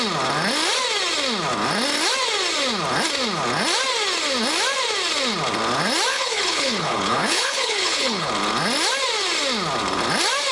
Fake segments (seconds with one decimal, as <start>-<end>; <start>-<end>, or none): 6.1-8.3